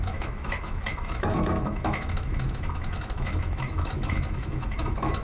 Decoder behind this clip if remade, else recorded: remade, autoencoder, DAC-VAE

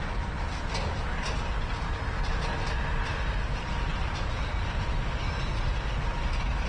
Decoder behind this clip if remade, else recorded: recorded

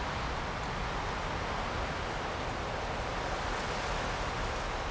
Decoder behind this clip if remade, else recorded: recorded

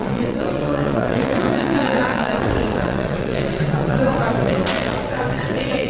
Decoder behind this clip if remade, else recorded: remade, vocoder, WaveNeXt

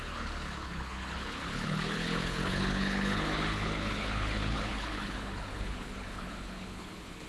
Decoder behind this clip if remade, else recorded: remade, codec, HILCodec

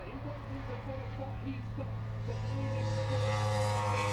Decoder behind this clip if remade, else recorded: recorded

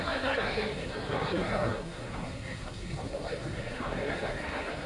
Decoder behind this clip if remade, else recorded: remade, codec, SNAC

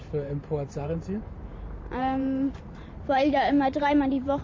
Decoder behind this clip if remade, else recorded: remade, vocoder, BigVGAN v2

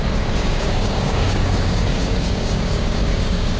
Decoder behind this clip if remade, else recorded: remade, codec, DAC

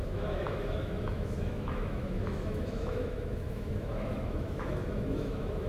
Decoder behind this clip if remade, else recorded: remade, autoencoder, DAC-VAE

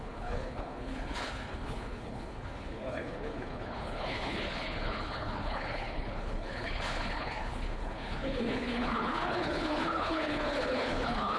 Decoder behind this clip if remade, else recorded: remade, codec, HILCodec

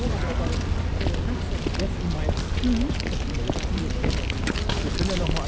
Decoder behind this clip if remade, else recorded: recorded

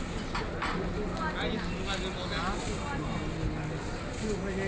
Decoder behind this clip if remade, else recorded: recorded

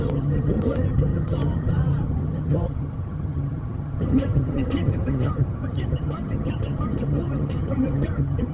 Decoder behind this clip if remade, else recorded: remade, vocoder, HiFi-GAN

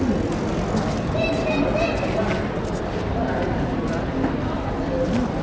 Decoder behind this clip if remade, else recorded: recorded